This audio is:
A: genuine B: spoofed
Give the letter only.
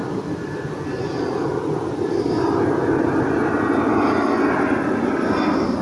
A